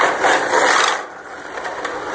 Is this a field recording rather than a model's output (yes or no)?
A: yes